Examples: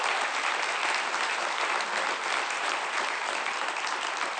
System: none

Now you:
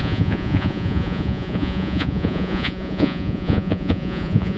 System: vocoder, Vocos